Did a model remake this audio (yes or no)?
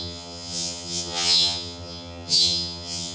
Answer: yes